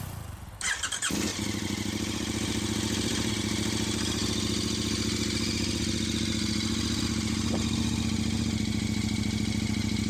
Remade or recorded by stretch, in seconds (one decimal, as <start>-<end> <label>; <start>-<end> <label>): 0.0-1.3 recorded; 1.3-3.3 remade; 3.3-10.1 recorded